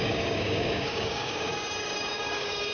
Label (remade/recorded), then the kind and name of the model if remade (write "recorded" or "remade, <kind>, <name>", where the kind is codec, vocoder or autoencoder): remade, codec, DAC